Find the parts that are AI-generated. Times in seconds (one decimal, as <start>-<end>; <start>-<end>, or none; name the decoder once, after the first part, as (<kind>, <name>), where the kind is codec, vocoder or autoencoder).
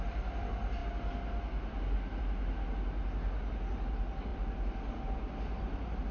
none